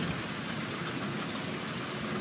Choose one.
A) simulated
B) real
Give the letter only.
B